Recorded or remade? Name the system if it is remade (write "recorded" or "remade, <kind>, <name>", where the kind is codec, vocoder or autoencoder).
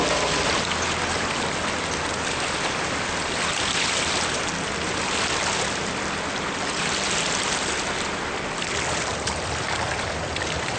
recorded